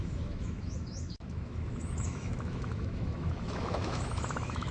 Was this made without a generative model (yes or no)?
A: no